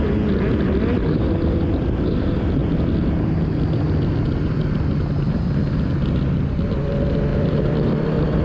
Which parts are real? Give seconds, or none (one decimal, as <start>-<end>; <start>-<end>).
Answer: 0.0-7.3